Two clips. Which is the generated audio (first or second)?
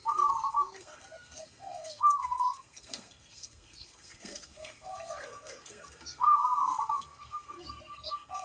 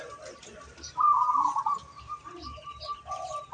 first